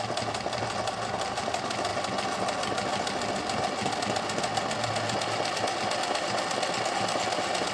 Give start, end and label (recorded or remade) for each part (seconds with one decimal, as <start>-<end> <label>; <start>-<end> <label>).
0.0-7.7 recorded